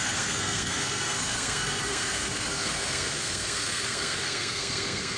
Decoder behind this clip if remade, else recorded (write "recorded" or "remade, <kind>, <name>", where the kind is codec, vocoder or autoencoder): remade, codec, SNAC